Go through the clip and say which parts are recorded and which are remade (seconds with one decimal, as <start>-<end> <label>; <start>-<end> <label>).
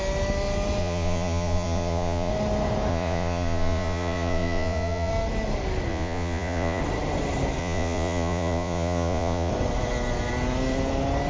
0.0-0.8 recorded; 0.8-2.3 remade; 2.3-2.9 recorded; 2.9-5.1 remade; 5.1-5.9 recorded; 5.9-6.8 remade; 6.8-7.6 recorded; 7.6-9.5 remade; 9.5-11.3 recorded